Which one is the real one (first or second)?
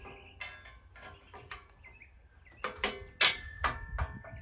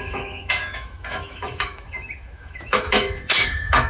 first